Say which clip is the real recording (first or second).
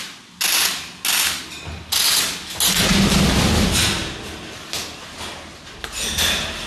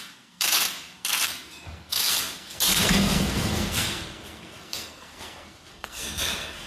first